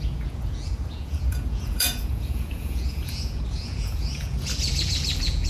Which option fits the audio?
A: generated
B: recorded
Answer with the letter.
A